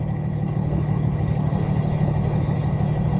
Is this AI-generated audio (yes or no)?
yes